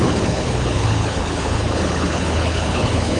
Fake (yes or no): yes